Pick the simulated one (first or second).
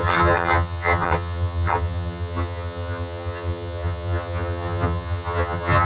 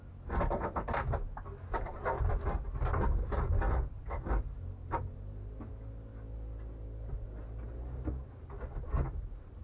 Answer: first